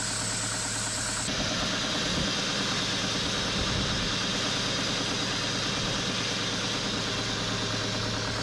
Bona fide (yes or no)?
yes